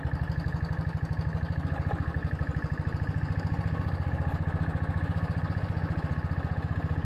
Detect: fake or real real